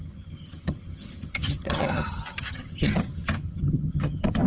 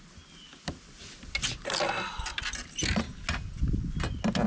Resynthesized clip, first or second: first